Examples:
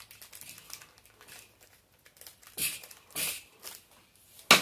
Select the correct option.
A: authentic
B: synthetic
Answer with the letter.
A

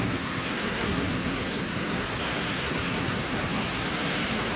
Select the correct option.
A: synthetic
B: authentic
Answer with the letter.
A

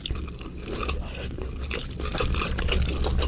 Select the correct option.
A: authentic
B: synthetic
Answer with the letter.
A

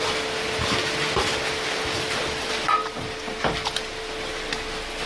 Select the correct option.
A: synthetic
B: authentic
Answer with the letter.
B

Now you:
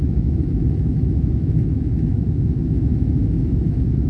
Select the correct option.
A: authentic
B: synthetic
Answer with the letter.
B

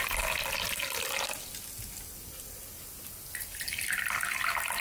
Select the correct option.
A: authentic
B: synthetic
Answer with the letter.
A